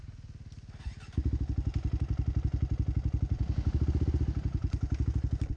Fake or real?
real